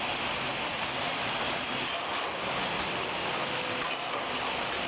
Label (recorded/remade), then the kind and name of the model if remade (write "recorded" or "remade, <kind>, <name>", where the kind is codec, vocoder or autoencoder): recorded